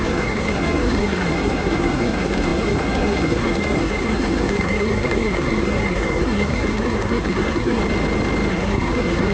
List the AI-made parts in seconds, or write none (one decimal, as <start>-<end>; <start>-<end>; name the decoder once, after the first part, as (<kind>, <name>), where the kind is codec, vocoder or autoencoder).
0.0-7.8 (codec, SNAC); 8.5-9.3